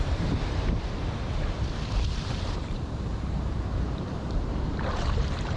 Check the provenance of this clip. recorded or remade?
remade